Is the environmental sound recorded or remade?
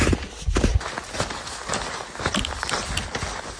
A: recorded